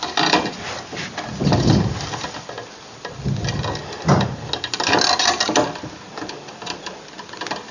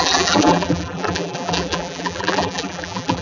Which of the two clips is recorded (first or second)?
first